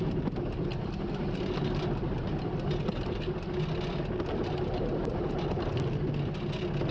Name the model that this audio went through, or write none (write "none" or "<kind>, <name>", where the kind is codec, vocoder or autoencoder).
none